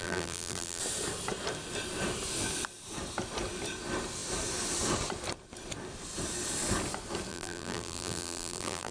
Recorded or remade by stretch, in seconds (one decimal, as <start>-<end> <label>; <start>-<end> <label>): 0.0-0.8 remade; 0.8-7.3 recorded; 7.3-8.9 remade